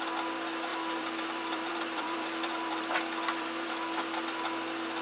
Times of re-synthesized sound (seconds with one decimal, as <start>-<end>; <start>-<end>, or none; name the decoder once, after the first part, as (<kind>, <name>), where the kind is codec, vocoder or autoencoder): 0.7-3.7 (vocoder, BigVGAN v2)

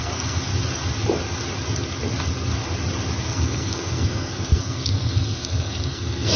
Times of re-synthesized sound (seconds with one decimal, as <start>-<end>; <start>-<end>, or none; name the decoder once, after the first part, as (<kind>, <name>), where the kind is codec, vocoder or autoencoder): 0.0-0.5 (codec, SNAC); 3.2-6.4

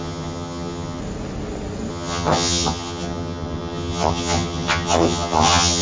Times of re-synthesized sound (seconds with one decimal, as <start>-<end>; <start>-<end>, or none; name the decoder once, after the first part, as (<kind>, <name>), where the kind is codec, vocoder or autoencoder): 0.0-1.0 (vocoder, HiFi-GAN); 1.9-5.8

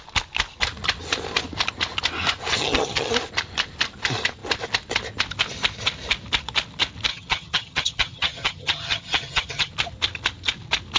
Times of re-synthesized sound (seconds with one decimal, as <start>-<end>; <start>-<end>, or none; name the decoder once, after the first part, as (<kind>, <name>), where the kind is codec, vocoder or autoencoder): 2.5-3.1 (vocoder, HiFi-GAN); 7.1-9.7

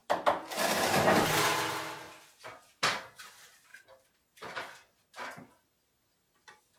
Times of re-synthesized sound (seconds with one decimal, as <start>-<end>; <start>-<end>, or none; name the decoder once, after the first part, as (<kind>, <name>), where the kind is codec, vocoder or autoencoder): none

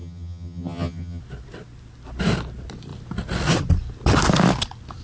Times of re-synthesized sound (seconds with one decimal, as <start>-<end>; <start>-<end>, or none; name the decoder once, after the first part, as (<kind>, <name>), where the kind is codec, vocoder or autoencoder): 0.0-1.2 (vocoder, HiFi-GAN)